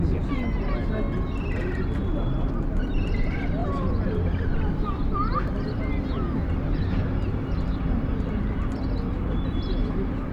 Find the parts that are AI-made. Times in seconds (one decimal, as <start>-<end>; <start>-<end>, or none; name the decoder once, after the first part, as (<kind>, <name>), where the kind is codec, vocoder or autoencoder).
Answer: none